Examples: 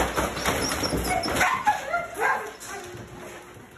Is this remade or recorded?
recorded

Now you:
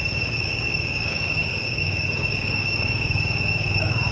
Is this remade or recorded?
remade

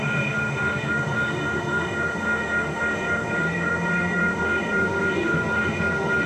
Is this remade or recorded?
remade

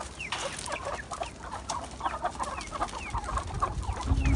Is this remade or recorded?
recorded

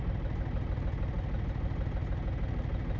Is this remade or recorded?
recorded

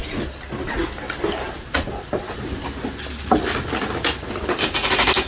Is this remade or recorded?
recorded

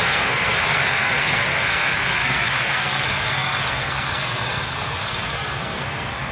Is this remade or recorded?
remade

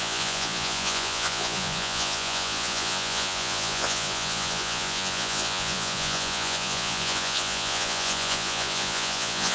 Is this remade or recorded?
remade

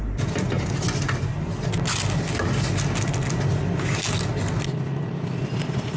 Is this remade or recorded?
recorded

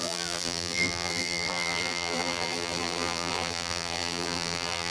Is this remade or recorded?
remade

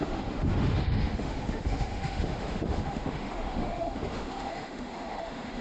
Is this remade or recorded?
remade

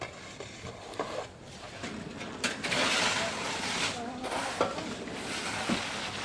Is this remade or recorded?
recorded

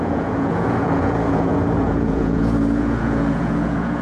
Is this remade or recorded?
remade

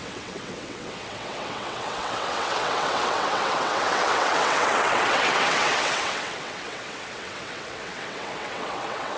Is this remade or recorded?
remade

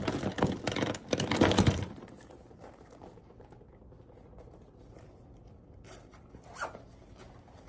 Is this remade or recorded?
recorded